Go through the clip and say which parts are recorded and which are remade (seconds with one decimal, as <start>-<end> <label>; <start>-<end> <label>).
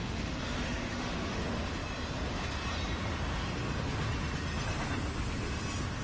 0.0-1.4 remade; 1.4-6.0 recorded